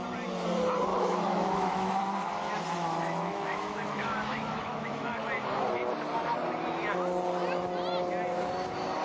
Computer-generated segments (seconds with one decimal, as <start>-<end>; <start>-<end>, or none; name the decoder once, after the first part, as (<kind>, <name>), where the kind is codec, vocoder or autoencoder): 0.9-2.0 (autoencoder, DAC-VAE); 2.8-5.2